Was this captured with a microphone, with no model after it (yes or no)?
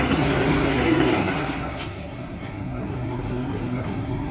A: no